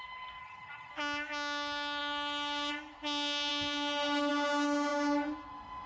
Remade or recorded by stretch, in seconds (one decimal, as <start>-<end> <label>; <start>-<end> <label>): 0.0-0.4 recorded; 0.4-0.9 remade; 0.9-5.9 recorded